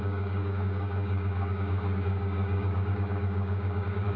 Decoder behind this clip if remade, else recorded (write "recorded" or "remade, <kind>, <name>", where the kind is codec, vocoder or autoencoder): remade, codec, DAC